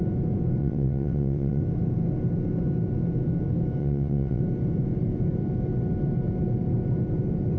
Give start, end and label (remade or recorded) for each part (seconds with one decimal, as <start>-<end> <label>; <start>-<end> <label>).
0.0-0.6 recorded; 0.6-1.6 remade; 1.6-3.8 recorded; 3.8-4.4 remade; 4.4-7.6 recorded